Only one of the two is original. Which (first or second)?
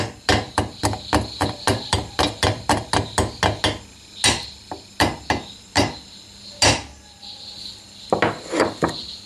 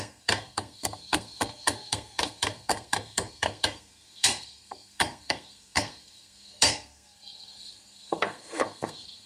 first